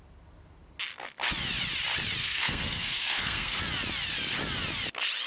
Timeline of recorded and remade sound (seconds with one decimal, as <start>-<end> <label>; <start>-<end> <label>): 0.0-2.2 recorded; 2.2-3.6 remade; 3.6-5.3 recorded